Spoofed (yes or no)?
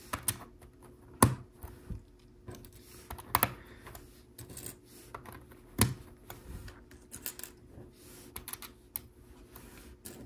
no